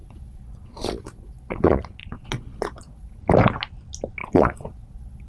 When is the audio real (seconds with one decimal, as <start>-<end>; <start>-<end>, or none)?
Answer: 3.2-4.2